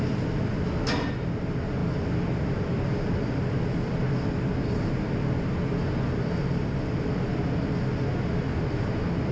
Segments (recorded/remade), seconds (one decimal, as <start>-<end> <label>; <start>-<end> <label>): 0.0-9.3 recorded